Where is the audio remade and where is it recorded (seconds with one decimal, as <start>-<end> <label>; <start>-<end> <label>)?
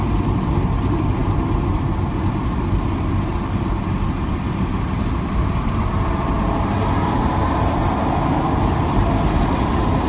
0.0-10.1 recorded